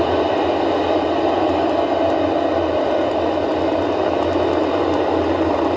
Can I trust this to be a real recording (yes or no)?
yes